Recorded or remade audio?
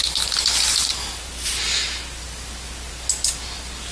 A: recorded